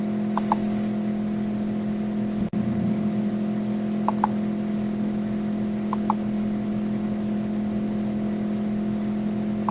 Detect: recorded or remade recorded